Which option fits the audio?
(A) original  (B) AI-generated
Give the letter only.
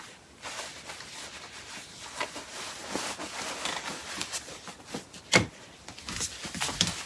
A